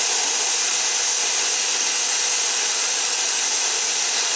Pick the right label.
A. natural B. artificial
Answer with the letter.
A